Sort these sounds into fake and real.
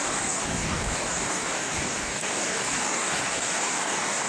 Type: fake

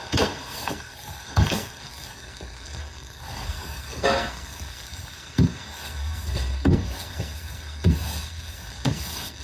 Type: fake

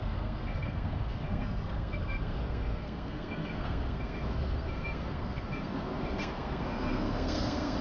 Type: fake